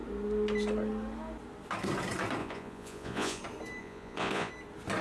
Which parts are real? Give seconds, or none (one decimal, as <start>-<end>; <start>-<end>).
0.0-2.4; 3.4-3.8; 4.5-5.0